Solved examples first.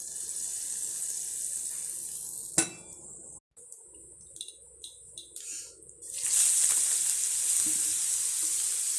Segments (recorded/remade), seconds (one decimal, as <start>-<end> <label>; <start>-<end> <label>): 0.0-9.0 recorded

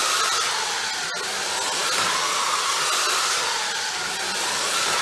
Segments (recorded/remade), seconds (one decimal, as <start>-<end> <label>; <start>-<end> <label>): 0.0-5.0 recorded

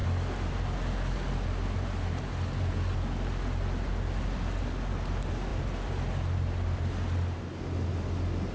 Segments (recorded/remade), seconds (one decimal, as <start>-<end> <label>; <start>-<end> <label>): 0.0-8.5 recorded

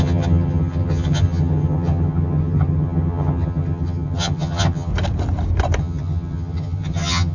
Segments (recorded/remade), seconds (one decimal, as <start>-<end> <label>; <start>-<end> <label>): 0.0-4.9 remade; 4.9-5.8 recorded; 5.8-7.3 remade

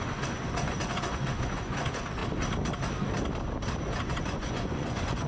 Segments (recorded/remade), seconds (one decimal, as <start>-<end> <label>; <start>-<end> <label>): 0.0-2.2 remade; 2.2-3.9 recorded; 3.9-5.3 remade

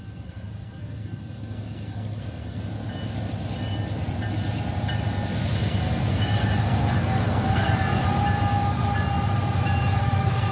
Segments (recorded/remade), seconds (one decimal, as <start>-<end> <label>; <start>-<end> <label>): 0.0-2.6 remade; 2.6-5.6 recorded; 5.6-8.0 remade; 8.0-10.0 recorded; 10.0-10.5 remade

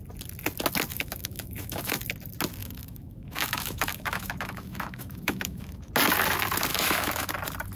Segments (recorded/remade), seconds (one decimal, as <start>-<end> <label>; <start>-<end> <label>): 0.0-0.9 recorded; 0.9-2.0 remade; 2.0-2.6 recorded; 2.6-5.9 remade; 5.9-6.7 recorded; 6.7-7.3 remade; 7.3-7.8 recorded